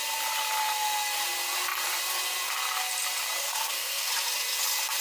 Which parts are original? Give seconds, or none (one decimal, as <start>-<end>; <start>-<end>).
0.0-3.4; 4.1-5.0